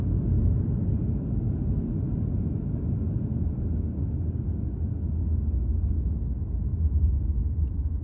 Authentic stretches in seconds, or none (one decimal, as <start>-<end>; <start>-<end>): 0.0-8.0